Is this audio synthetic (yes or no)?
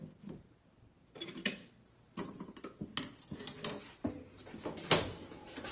no